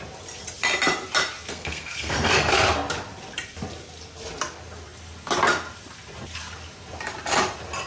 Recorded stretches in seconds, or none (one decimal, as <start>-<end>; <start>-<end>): 0.0-1.5; 2.5-7.9